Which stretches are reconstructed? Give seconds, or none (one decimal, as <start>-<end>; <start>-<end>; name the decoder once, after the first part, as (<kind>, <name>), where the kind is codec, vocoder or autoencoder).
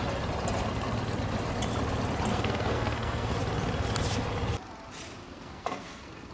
2.3-3.3 (codec, SNAC); 5.2-6.3